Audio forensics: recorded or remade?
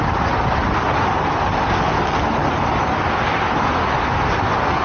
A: recorded